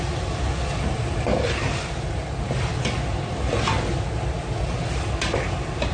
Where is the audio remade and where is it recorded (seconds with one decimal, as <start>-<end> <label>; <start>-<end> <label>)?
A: 0.0-5.9 recorded